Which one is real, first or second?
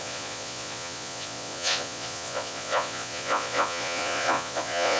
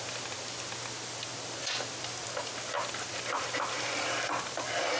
second